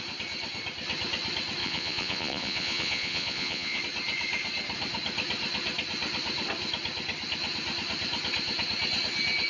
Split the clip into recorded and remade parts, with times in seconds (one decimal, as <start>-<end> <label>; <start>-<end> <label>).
0.0-1.6 recorded; 1.6-3.8 remade; 3.8-9.5 recorded